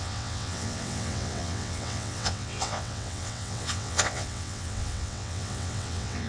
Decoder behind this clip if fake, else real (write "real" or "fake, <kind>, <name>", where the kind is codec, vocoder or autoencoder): fake, vocoder, WaveNeXt